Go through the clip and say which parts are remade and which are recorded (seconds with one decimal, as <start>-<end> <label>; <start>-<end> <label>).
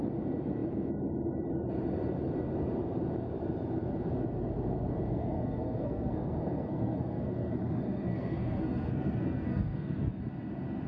0.0-5.1 recorded; 5.1-10.2 remade; 10.2-10.9 recorded